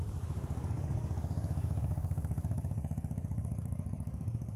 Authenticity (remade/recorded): remade